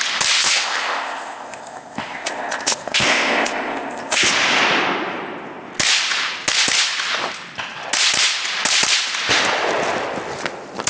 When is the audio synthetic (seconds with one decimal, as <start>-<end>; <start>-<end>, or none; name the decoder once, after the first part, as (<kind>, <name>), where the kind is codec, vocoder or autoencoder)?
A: 0.4-4.3 (codec, ZipCodec)